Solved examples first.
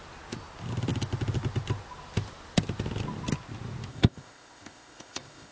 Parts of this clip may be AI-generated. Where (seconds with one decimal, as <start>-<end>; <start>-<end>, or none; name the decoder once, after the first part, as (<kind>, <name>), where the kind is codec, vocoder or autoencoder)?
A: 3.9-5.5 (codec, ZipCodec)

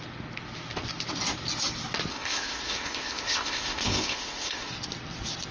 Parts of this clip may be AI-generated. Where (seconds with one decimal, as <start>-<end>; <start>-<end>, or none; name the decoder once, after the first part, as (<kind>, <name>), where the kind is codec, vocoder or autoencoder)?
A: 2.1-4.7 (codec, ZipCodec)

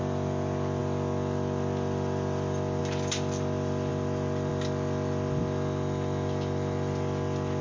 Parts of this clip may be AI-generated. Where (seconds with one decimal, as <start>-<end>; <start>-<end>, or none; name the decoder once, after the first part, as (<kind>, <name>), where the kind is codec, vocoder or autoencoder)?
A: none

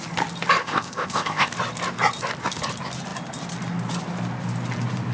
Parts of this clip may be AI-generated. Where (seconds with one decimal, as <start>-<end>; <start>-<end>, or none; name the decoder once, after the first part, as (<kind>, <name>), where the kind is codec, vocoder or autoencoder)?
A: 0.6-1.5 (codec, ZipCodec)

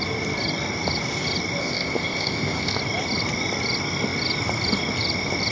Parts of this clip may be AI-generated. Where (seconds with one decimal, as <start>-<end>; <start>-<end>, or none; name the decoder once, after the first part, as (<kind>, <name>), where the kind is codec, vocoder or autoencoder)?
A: 1.6-2.8 (codec, ZipCodec)